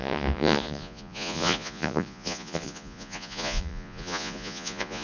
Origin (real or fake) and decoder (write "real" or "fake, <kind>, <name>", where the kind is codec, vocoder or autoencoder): fake, vocoder, Vocos